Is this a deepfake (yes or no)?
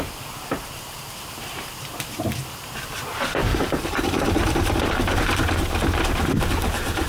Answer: yes